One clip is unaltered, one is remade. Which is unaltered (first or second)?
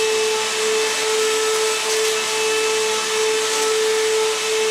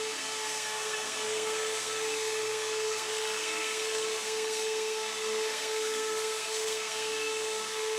first